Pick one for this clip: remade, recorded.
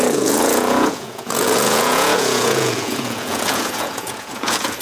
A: remade